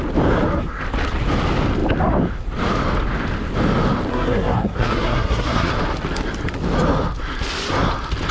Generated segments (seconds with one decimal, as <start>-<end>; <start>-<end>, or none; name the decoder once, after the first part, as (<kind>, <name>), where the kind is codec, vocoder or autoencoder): 4.1-5.7 (codec, SNAC)